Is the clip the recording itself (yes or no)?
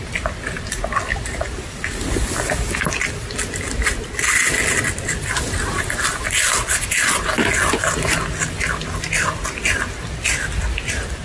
yes